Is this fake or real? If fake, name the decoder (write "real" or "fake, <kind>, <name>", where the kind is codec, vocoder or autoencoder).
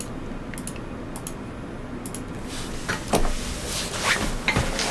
real